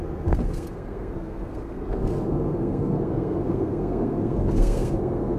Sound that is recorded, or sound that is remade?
remade